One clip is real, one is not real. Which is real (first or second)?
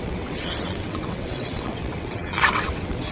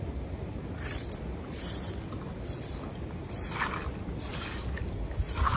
second